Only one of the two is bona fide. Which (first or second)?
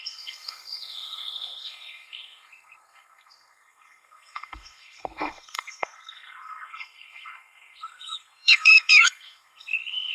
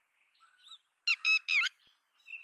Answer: second